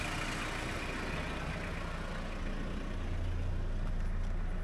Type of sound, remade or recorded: recorded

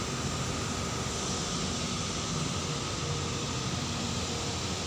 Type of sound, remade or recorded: recorded